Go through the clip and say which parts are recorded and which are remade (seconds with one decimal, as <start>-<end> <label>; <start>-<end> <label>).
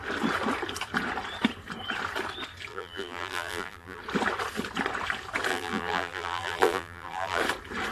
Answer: 0.0-2.7 recorded; 2.7-4.0 remade; 4.0-5.5 recorded; 5.5-7.4 remade; 7.4-7.9 recorded